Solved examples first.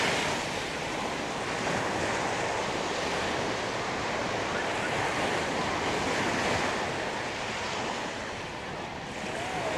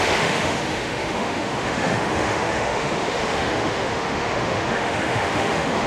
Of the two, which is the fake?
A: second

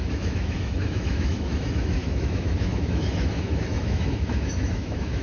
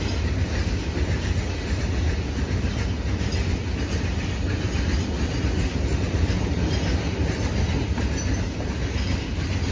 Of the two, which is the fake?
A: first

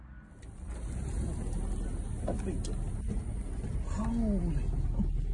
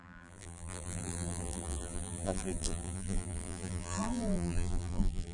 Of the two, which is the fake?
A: second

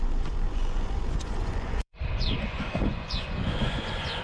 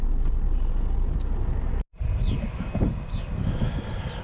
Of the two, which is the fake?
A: first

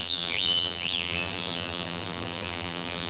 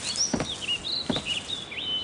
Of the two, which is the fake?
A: first